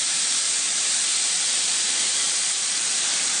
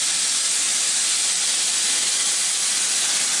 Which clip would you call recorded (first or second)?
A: second